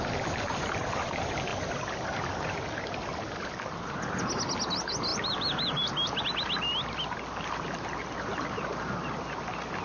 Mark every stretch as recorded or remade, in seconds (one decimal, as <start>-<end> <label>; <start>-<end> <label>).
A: 0.0-1.5 recorded; 1.5-3.5 remade; 3.5-5.1 recorded; 5.1-6.2 remade; 6.2-9.8 recorded